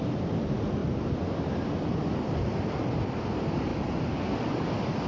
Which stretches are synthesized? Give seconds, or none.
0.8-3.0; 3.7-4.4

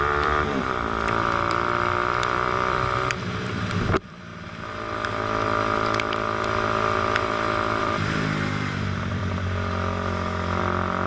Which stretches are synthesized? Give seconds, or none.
0.0-4.3; 7.8-9.2; 10.6-11.1

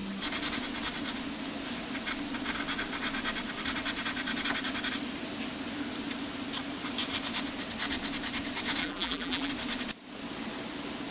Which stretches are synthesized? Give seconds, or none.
8.8-9.5

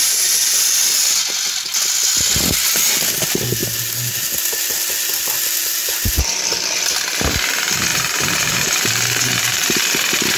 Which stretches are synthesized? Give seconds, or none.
7.9-9.8

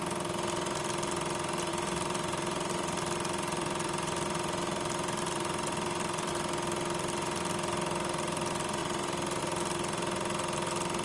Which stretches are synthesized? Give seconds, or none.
1.7-6.3; 8.8-9.4

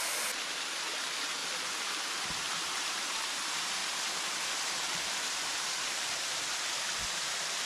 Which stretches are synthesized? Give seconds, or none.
none